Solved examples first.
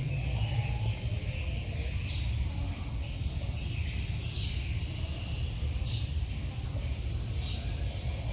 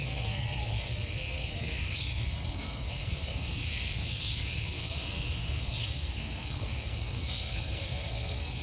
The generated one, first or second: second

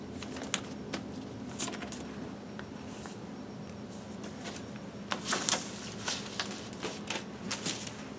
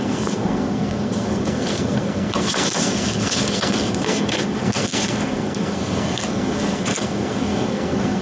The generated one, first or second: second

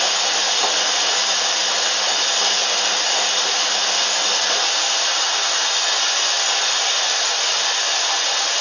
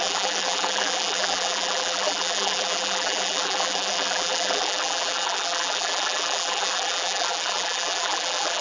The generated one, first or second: second